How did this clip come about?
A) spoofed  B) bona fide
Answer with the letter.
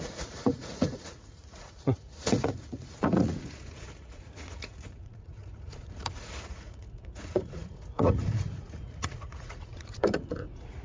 A